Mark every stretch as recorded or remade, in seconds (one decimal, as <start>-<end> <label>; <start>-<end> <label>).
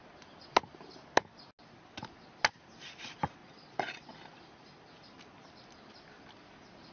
0.0-3.4 recorded; 3.4-4.1 remade; 4.1-6.9 recorded